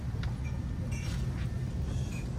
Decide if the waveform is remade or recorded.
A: recorded